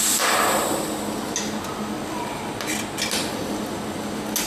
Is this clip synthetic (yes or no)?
no